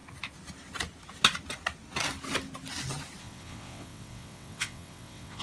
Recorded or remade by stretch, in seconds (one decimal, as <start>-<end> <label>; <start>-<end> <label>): 0.0-3.2 recorded; 3.2-5.4 remade